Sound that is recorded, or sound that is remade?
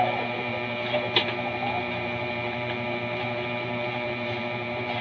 remade